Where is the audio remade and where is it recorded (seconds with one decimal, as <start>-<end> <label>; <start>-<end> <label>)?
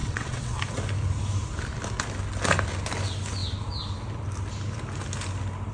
0.0-0.6 remade; 0.6-5.7 recorded